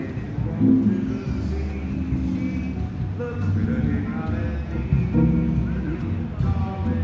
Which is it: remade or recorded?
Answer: recorded